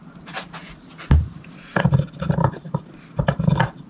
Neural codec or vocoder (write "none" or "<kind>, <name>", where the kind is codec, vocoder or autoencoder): none